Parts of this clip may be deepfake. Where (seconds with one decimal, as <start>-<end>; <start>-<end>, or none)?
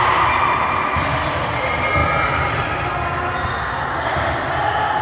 none